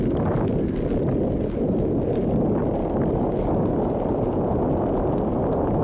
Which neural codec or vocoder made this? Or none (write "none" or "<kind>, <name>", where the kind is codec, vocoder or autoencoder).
none